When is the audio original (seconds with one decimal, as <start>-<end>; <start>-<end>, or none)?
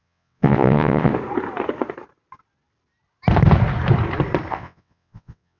1.1-4.5